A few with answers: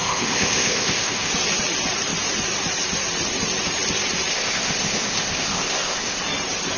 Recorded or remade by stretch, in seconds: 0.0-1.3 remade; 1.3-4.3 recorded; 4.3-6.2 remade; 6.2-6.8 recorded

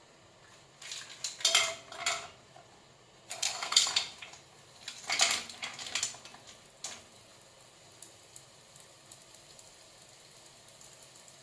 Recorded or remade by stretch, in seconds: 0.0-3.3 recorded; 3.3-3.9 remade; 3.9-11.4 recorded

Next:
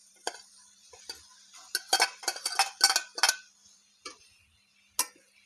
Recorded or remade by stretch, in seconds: 0.0-5.5 recorded